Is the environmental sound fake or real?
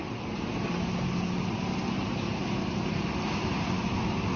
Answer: real